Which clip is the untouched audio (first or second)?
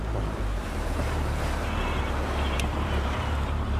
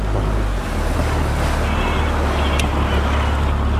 second